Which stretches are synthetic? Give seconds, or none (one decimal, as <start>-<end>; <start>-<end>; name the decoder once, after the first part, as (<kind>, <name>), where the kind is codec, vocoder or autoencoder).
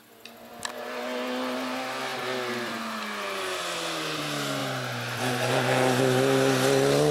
none